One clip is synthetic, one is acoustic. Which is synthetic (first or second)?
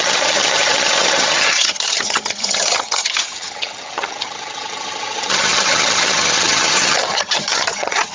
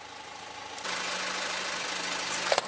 first